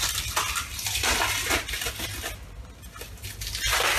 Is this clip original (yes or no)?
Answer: yes